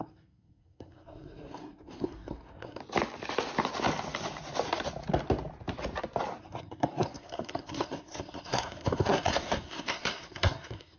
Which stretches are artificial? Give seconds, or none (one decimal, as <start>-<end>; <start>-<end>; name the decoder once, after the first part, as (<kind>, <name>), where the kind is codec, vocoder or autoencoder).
0.0-2.8 (codec, SNAC); 6.4-11.0